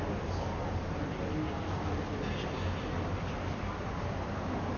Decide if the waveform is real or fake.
real